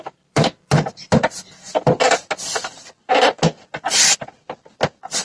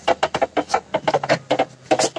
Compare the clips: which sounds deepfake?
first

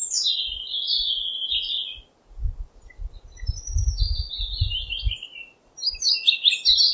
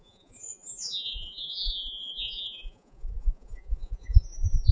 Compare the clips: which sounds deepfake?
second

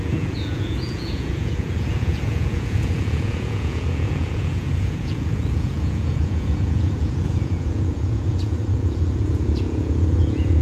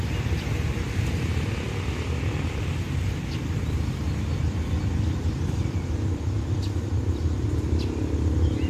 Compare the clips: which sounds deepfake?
first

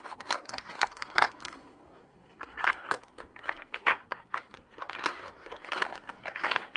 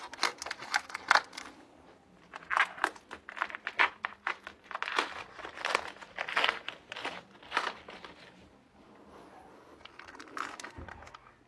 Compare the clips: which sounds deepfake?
first